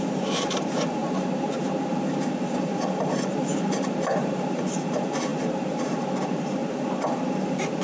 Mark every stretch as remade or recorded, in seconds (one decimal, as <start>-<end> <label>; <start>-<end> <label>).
0.0-6.6 remade; 6.6-7.8 recorded